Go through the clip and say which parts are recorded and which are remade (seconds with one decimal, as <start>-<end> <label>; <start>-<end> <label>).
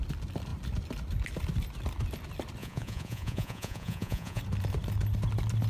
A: 0.0-2.6 recorded; 2.6-4.4 remade; 4.4-5.7 recorded